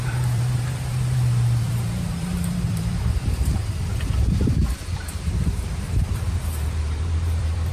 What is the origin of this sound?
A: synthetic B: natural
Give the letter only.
A